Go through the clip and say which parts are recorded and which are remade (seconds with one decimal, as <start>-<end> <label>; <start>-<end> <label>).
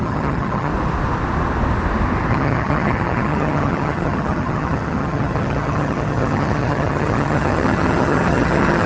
0.0-0.7 remade; 0.7-2.3 recorded; 2.3-8.9 remade